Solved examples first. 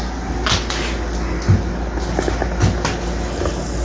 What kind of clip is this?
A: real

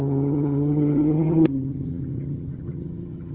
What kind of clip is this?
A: fake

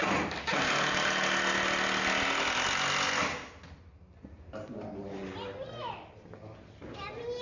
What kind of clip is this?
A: real